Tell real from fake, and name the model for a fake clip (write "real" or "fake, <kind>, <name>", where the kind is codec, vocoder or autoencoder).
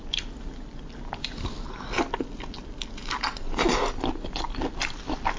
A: real